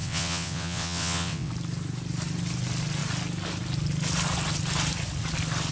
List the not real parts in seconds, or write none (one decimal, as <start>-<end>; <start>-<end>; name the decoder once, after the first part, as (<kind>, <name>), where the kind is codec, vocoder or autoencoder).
0.0-1.5 (vocoder, WaveNeXt)